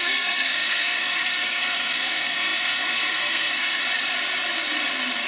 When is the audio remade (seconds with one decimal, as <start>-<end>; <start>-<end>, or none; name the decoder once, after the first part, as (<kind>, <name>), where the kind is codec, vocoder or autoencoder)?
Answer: 0.0-3.8 (codec, SNAC)